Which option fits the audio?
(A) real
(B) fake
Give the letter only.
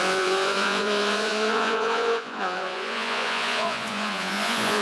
B